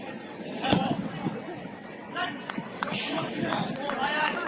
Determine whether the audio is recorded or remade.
remade